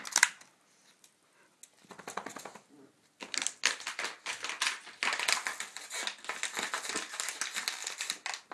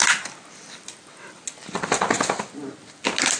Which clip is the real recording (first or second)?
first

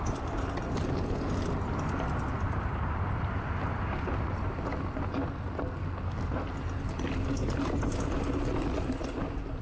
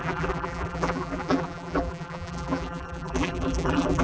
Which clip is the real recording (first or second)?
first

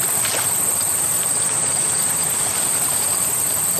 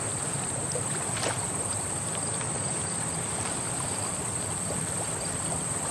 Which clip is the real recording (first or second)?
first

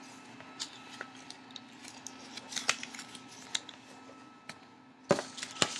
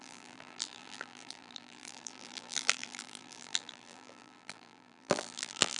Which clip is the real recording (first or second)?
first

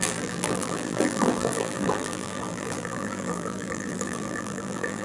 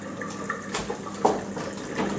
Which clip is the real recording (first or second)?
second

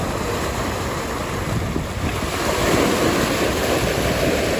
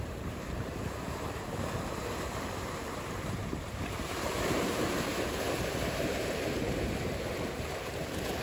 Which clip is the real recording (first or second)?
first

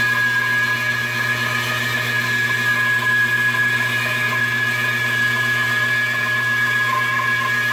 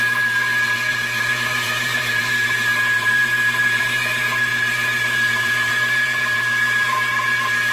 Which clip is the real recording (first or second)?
first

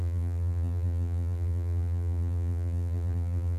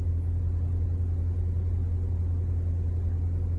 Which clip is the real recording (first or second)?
second